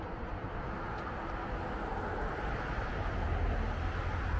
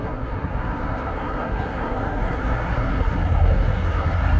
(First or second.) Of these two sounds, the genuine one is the first